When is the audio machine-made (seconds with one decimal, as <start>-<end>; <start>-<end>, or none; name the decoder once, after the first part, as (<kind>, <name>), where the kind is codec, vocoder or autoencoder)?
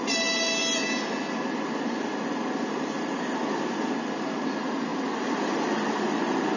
none